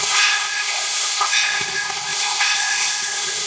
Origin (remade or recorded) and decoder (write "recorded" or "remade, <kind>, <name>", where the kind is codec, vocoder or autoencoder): remade, codec, ZipCodec